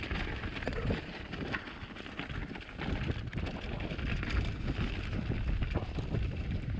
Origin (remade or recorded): recorded